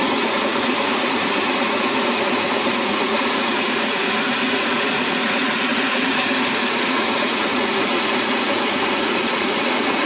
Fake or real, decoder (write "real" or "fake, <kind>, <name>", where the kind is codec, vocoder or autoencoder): fake, vocoder, Vocos